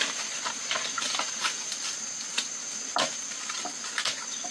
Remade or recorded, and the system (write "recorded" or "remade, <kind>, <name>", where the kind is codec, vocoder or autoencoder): recorded